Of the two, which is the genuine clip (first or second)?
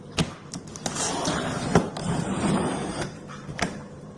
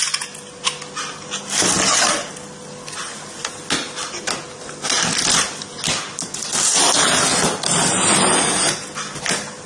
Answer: second